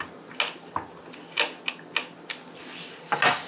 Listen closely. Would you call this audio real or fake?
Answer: real